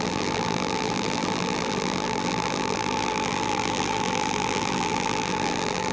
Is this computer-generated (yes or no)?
yes